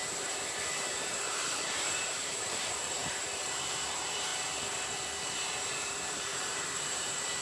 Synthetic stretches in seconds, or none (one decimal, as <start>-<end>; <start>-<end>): 0.0-4.3; 5.7-7.4